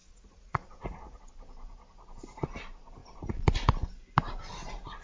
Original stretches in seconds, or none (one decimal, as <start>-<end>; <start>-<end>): 1.2-5.0

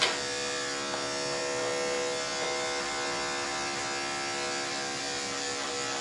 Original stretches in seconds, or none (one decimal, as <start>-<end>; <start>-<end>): 0.0-6.0